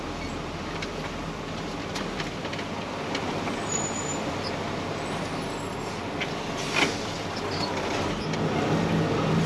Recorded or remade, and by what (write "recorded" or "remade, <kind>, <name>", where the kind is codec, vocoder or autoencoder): recorded